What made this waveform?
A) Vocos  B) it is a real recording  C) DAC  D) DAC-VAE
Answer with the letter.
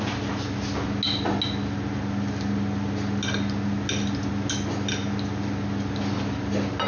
B